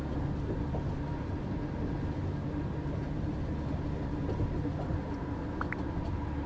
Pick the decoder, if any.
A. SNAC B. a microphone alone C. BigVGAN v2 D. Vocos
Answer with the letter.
B